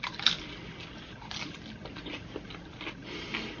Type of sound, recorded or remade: recorded